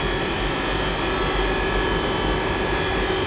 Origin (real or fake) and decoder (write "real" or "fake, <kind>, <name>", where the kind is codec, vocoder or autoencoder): real